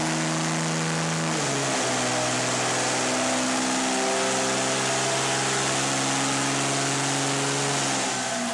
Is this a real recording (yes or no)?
yes